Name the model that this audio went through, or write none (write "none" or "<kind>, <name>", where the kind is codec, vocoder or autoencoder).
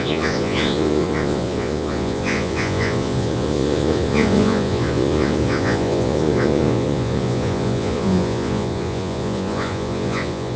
vocoder, Vocos